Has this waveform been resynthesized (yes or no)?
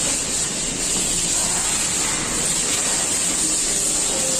no